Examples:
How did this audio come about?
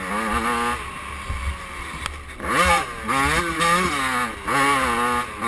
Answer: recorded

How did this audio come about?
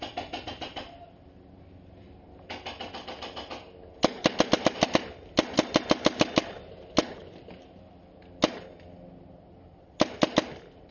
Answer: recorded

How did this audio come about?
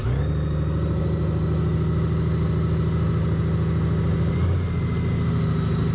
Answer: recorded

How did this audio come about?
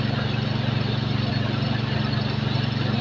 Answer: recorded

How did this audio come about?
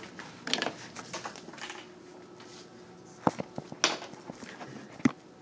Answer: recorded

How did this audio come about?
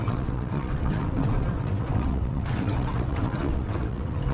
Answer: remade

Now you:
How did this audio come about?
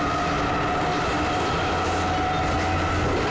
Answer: recorded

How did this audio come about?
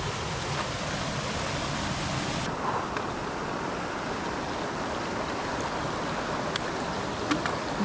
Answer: recorded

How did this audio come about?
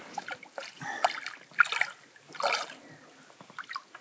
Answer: recorded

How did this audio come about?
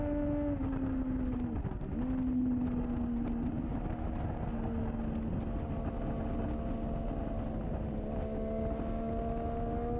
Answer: recorded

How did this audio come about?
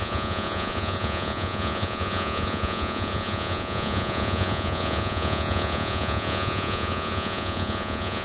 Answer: remade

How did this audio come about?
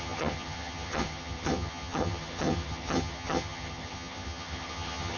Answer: remade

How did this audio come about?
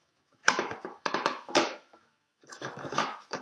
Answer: remade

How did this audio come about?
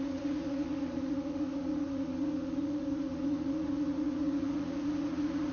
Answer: remade